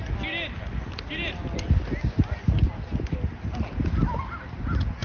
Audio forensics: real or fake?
real